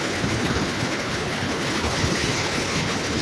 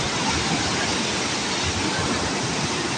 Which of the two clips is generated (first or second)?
first